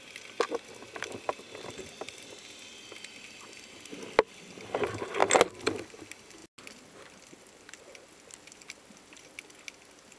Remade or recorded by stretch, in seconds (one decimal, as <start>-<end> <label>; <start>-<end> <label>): 0.0-10.2 recorded